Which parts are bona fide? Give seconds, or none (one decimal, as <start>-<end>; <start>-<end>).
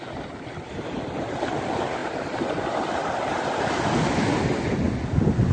0.0-2.0; 3.2-5.5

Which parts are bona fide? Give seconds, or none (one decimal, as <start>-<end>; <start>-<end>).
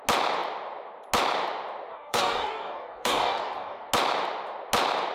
0.0-1.9; 3.9-5.1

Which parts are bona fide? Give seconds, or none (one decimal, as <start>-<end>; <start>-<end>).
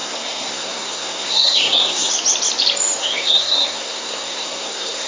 2.1-3.0